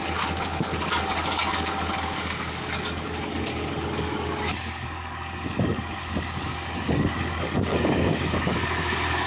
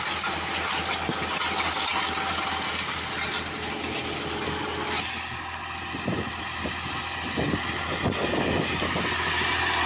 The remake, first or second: first